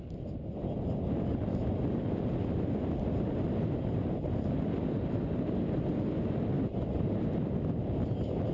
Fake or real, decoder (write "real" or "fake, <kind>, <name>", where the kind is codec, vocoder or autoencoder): real